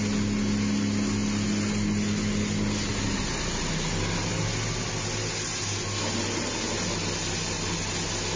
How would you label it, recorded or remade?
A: recorded